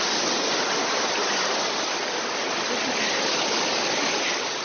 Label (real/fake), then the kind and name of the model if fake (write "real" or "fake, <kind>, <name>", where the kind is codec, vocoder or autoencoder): real